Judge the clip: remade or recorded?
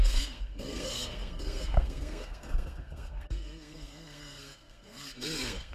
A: remade